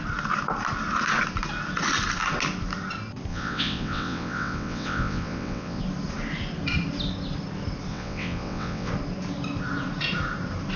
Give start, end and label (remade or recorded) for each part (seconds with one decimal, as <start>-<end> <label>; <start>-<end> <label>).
0.0-3.3 recorded; 3.3-5.8 remade; 5.8-7.9 recorded; 7.9-8.9 remade; 8.9-10.8 recorded